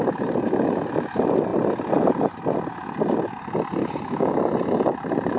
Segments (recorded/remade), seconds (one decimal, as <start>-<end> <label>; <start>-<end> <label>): 0.0-3.8 recorded; 3.8-4.4 remade; 4.4-5.4 recorded